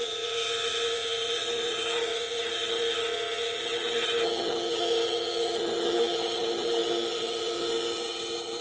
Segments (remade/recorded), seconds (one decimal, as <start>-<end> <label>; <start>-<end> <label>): 0.0-8.6 remade